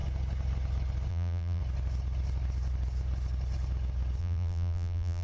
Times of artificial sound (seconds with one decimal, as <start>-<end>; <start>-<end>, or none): 1.1-1.6; 4.2-5.2